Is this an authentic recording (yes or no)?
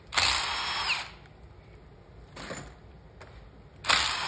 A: yes